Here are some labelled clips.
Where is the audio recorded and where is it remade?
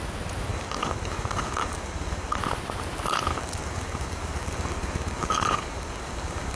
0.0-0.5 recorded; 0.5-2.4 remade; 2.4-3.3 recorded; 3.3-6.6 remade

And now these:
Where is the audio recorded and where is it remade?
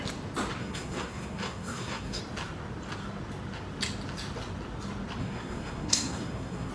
0.0-0.6 recorded; 0.6-2.2 remade; 2.2-5.2 recorded; 5.2-6.7 remade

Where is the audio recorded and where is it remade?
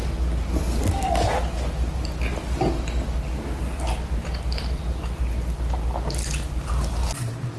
0.0-7.6 recorded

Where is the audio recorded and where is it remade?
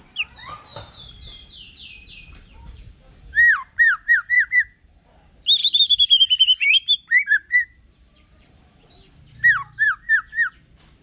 0.0-0.7 recorded; 0.7-5.1 remade; 5.1-5.6 recorded; 5.6-8.6 remade; 8.6-11.0 recorded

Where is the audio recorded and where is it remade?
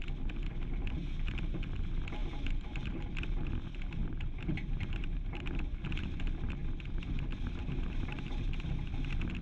0.0-1.0 recorded; 1.0-1.5 remade; 1.5-2.2 recorded; 2.2-3.0 remade; 3.0-4.0 recorded; 4.0-5.5 remade; 5.5-9.4 recorded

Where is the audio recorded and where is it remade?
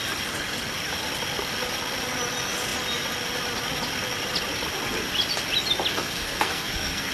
0.0-5.9 recorded; 5.9-7.1 remade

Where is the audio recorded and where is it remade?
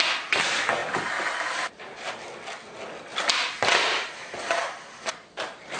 0.0-0.8 recorded; 0.8-2.1 remade; 2.1-3.1 recorded; 3.1-5.8 remade